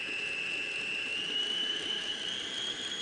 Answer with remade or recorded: recorded